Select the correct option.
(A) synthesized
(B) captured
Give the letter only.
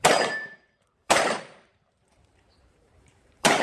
A